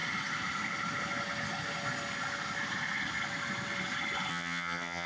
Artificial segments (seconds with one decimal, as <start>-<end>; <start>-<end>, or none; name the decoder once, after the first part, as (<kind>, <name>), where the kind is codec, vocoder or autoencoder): 4.3-5.1 (vocoder, HiFi-GAN)